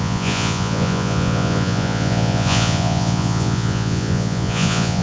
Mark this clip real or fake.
fake